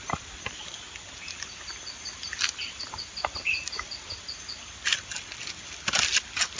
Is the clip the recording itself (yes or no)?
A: yes